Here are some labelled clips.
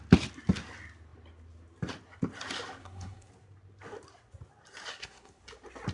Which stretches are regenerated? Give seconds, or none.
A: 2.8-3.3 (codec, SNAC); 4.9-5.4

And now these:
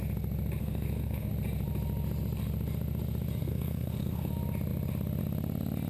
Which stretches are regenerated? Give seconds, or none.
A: 0.6-1.3 (codec, SNAC); 3.4-4.3